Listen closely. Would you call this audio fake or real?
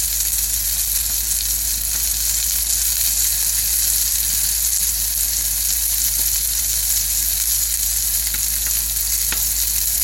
real